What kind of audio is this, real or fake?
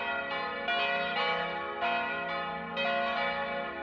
real